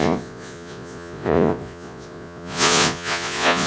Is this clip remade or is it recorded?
remade